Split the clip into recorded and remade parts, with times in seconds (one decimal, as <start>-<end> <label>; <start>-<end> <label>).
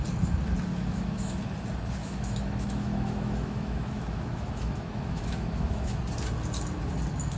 0.0-0.7 recorded; 0.7-1.4 remade; 1.4-2.0 recorded; 2.0-6.0 remade; 6.0-7.4 recorded